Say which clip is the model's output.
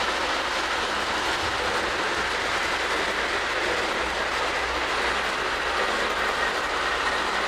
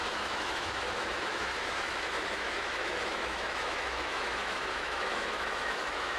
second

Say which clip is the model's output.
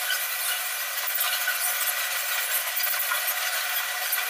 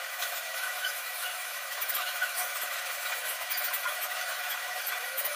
second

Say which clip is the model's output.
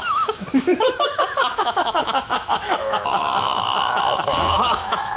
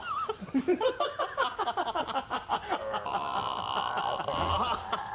first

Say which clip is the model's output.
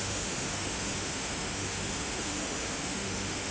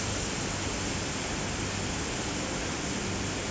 first